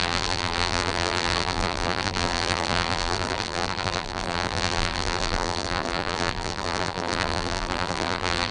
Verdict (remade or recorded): remade